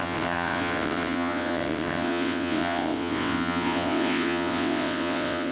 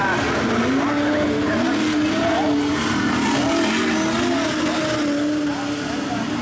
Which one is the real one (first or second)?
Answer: second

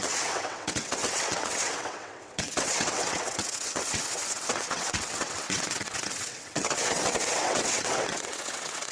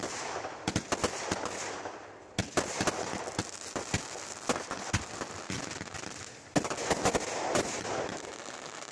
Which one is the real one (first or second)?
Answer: second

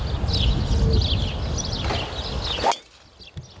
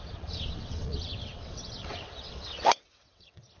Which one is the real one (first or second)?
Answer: first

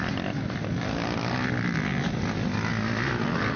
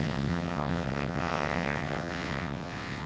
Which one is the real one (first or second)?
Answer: first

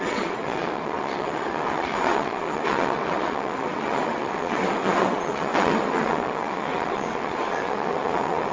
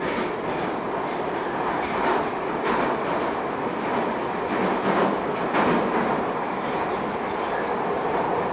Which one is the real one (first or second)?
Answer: second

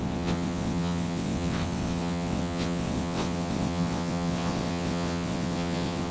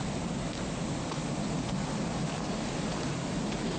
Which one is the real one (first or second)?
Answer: second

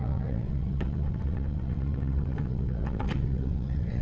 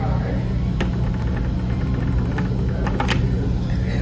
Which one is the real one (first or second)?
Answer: second